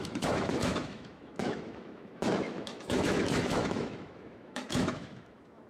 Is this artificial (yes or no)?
yes